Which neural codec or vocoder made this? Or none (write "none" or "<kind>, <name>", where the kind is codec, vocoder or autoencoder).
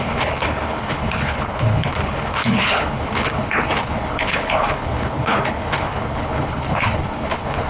codec, HILCodec